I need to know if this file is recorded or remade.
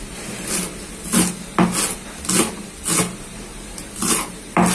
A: recorded